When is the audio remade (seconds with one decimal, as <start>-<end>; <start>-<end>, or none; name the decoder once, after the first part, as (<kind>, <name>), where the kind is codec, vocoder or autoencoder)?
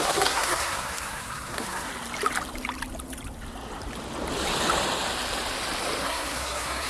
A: 0.0-1.9 (codec, SNAC); 6.0-6.9